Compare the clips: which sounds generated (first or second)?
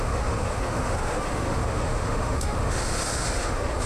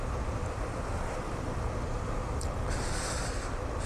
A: first